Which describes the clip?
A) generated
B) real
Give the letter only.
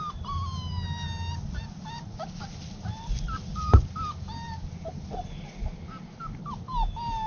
B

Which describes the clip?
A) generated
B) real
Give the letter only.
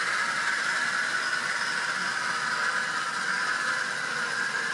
B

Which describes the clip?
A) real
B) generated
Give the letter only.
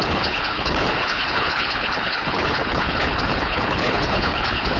B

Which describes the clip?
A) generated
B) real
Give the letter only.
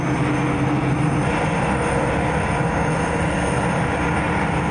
B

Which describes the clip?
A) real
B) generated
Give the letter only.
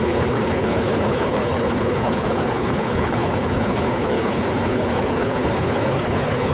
B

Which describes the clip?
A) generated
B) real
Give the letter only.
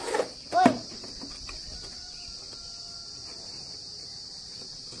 B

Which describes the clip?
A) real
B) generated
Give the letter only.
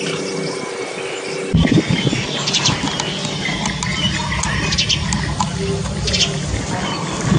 A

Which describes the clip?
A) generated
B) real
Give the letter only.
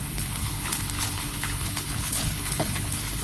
A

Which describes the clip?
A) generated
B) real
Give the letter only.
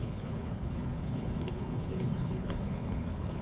A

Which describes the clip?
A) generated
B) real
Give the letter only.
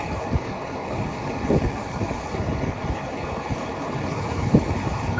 A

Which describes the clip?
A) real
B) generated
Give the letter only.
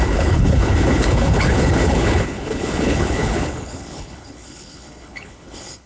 B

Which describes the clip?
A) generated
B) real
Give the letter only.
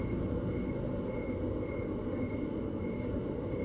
B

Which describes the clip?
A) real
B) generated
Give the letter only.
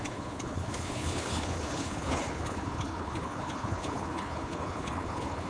B